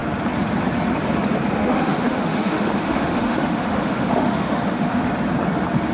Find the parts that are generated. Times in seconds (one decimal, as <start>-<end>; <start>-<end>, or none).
1.6-5.1